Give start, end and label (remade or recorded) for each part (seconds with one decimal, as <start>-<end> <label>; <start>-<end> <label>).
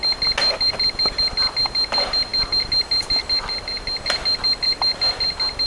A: 0.0-5.7 recorded